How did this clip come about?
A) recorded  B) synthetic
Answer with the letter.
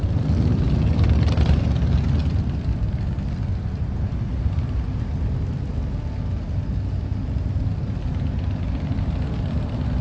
A